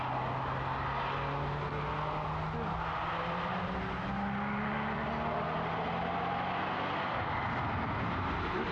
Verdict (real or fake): real